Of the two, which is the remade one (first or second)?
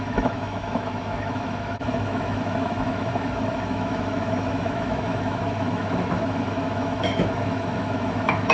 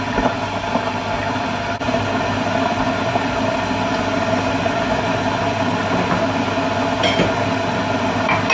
first